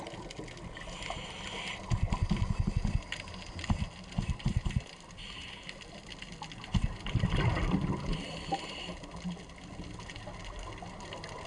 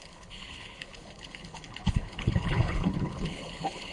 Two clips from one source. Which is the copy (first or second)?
second